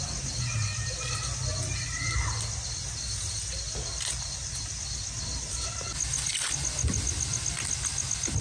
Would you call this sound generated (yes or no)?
no